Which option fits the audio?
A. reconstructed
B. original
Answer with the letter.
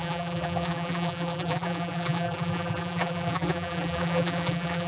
A